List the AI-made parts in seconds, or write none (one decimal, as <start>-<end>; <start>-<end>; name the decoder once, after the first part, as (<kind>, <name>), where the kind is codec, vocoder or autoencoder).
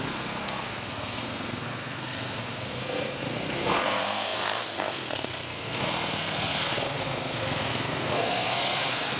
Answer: 0.0-9.2 (codec, SNAC)